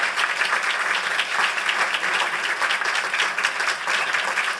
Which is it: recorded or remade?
recorded